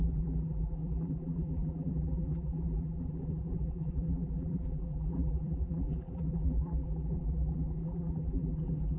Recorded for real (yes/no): no